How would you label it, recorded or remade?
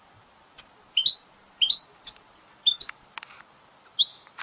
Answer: recorded